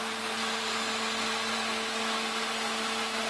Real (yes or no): yes